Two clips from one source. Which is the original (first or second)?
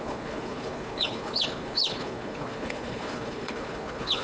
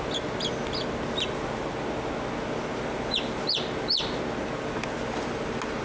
second